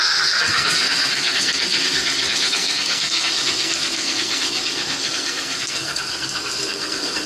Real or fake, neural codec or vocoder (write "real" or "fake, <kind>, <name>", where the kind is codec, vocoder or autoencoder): fake, codec, SNAC